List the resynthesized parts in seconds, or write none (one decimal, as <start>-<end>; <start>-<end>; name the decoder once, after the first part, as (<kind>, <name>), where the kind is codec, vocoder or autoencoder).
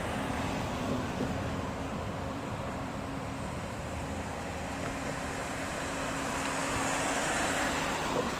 1.9-3.8 (vocoder, BigVGAN v2); 5.4-5.9; 6.6-7.7